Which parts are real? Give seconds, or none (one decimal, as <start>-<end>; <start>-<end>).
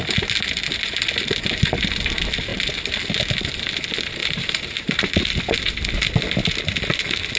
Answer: 0.0-4.2; 5.4-7.4